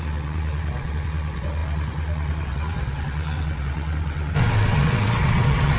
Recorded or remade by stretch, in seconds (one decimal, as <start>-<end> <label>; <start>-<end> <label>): 0.0-5.8 remade